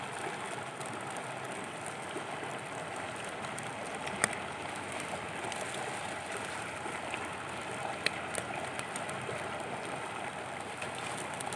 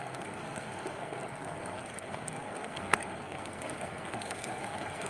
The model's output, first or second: second